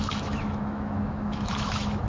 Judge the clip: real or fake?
fake